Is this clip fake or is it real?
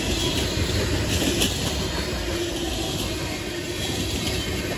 real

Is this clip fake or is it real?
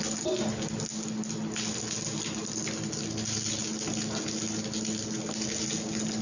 real